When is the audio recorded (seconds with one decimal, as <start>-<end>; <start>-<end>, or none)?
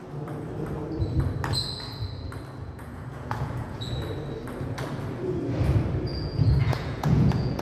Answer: 0.0-2.6; 3.9-6.1